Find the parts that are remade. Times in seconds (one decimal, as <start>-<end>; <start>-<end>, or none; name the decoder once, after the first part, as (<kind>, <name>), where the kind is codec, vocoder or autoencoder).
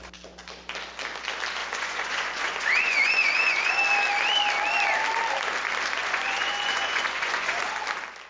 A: 1.6-3.7 (vocoder, Vocos); 6.0-7.7